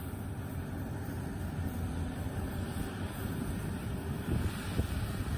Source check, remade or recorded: remade